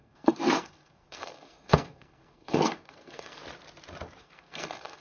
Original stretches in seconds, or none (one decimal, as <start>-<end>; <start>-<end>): 3.4-4.2